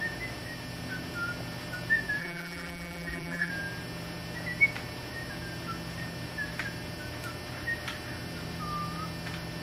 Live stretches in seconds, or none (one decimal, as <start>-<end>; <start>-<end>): 0.0-2.2; 3.5-9.6